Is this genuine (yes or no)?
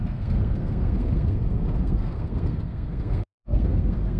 no